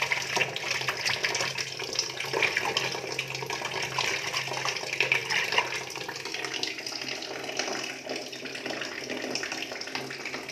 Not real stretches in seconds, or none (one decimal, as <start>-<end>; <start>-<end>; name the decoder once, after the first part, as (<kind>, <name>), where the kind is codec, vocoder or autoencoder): none